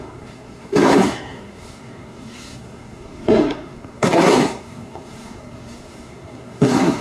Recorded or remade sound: remade